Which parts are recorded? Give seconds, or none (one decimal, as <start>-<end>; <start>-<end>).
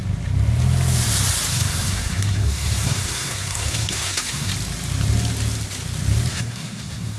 0.0-1.5; 4.5-6.3